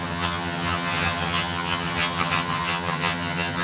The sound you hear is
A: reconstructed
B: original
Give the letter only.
A